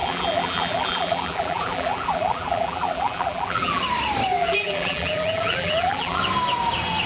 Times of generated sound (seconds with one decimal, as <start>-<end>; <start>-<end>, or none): 0.0-3.8; 4.4-6.2